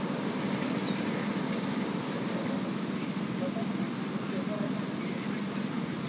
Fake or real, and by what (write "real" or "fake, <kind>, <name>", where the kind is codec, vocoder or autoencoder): real